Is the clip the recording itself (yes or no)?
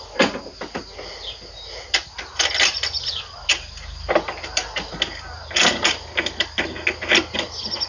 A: yes